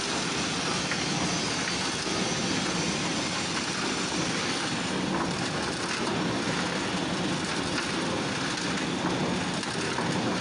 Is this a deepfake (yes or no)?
no